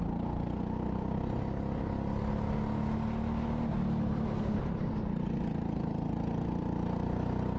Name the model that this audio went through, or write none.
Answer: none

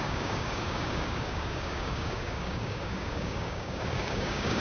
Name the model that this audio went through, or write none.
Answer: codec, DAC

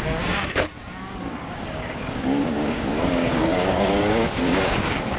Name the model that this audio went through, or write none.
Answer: codec, DAC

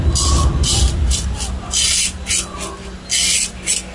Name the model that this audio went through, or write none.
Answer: none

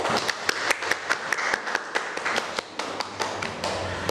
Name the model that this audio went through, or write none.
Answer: none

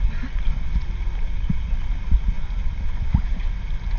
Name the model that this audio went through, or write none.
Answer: none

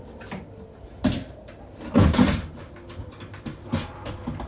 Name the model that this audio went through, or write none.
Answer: none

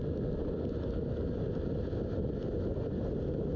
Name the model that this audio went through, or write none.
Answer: none